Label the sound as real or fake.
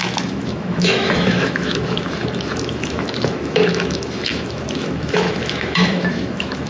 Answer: fake